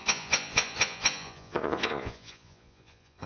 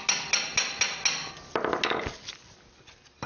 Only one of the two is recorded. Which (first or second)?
second